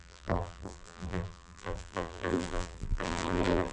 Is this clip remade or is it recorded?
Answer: remade